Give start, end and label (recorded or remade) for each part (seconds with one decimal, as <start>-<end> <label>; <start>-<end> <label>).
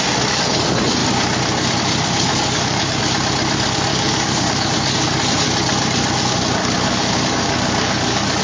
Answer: 0.0-2.3 recorded; 2.3-3.0 remade; 3.0-3.9 recorded; 3.9-5.0 remade; 5.0-6.6 recorded; 6.6-8.4 remade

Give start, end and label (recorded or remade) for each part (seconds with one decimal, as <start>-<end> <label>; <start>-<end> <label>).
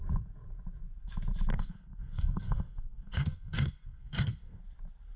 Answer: 0.0-1.5 recorded; 1.5-4.6 remade; 4.6-5.2 recorded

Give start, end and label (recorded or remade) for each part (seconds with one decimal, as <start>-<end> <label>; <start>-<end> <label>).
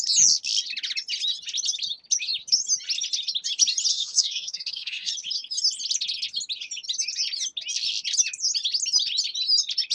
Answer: 0.0-3.9 recorded; 3.9-5.1 remade; 5.1-9.9 recorded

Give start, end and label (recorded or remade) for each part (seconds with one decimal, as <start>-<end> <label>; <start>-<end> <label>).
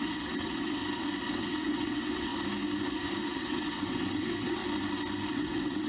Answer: 0.0-0.8 remade; 0.8-1.3 recorded; 1.3-2.3 remade; 2.3-3.4 recorded; 3.4-4.6 remade; 4.6-5.3 recorded; 5.3-5.9 remade